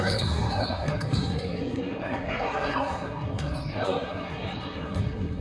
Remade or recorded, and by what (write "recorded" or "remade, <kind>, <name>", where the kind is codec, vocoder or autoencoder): remade, codec, SNAC